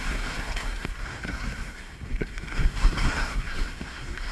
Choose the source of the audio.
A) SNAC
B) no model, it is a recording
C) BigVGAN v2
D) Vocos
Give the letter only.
A